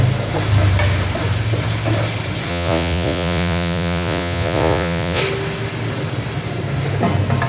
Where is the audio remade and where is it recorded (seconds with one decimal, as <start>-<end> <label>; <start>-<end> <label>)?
0.0-2.5 recorded; 2.5-5.2 remade; 5.2-7.5 recorded